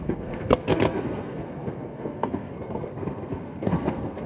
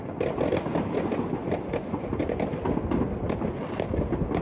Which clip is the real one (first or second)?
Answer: second